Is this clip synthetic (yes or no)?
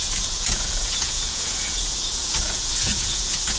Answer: yes